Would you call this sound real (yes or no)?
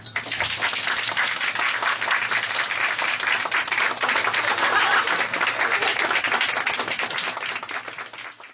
yes